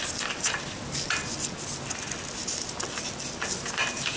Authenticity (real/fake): real